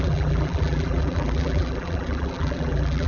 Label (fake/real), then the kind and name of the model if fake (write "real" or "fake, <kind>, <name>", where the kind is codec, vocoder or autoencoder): fake, vocoder, BigVGAN v2